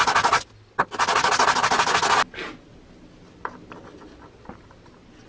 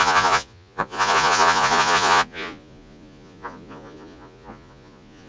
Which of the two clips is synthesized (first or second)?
second